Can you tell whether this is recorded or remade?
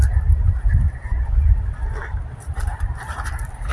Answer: remade